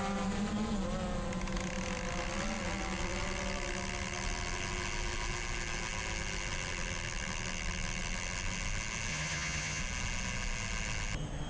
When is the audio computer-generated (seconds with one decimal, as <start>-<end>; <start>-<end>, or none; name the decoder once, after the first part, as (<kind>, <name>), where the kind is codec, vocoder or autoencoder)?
9.1-9.8 (vocoder, HiFi-GAN)